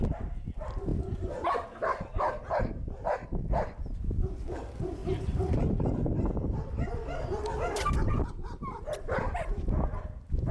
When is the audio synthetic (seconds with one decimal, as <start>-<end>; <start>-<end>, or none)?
0.0-0.9; 3.8-10.5